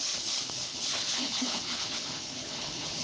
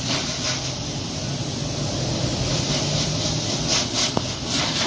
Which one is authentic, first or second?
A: second